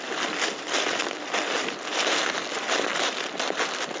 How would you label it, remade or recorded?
recorded